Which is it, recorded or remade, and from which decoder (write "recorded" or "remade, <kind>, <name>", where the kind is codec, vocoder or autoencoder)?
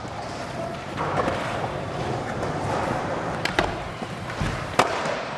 remade, vocoder, BigVGAN v2